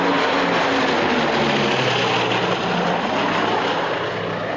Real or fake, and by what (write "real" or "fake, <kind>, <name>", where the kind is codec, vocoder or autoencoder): real